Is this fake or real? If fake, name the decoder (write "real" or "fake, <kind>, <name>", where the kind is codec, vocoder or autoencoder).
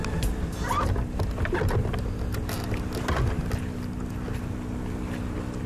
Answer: real